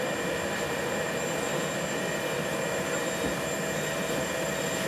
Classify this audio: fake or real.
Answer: real